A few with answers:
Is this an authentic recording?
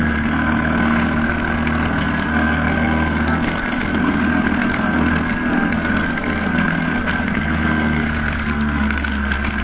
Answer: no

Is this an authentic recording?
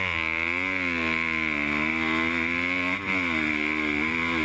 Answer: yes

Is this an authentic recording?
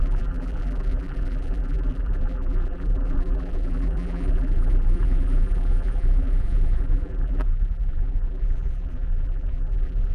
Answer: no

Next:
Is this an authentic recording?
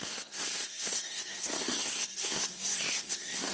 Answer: no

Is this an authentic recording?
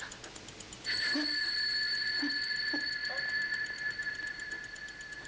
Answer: yes